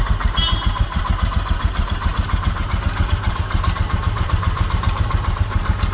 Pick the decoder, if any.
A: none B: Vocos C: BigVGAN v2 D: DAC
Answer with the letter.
C